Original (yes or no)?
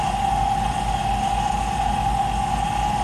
yes